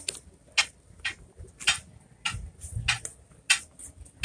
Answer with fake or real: real